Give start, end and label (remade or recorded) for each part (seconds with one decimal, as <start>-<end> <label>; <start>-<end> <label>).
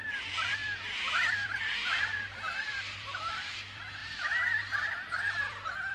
0.0-5.9 remade